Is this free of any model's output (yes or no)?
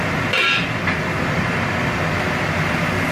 yes